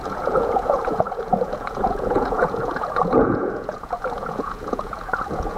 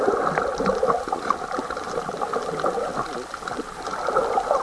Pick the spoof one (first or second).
first